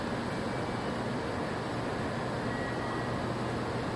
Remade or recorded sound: recorded